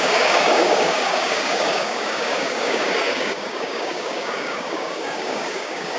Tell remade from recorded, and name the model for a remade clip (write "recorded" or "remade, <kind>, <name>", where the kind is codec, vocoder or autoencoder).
remade, codec, DAC